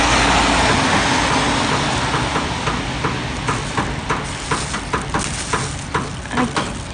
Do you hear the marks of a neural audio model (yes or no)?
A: no